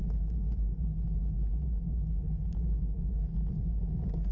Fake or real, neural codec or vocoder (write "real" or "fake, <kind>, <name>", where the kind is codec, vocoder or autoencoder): real